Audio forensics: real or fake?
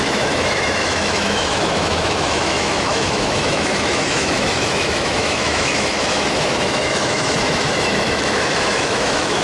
fake